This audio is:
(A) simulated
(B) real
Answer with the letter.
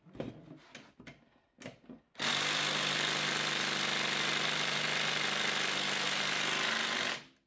B